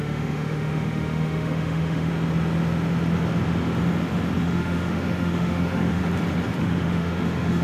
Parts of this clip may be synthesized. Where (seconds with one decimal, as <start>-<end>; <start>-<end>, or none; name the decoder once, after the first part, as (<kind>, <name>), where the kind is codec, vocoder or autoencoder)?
0.0-2.1 (autoencoder, DAC-VAE); 4.4-6.0; 6.6-7.6